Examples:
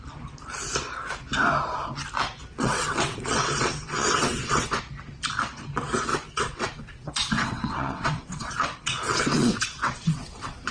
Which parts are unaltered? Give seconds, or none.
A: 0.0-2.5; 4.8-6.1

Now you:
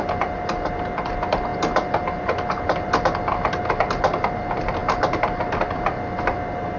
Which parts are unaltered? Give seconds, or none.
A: 0.0-6.8

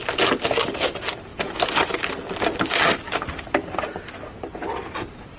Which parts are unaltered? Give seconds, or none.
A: 0.0-5.4

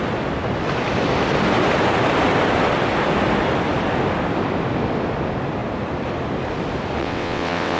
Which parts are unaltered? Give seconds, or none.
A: 0.0-7.0

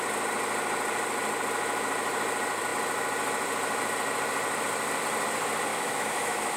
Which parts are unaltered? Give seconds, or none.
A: 0.0-5.7